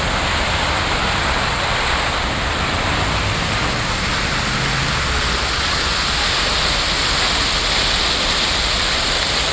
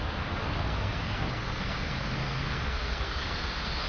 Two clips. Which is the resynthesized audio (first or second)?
second